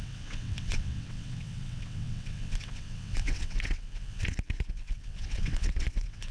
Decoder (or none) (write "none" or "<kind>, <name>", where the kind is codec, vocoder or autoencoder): vocoder, WaveNeXt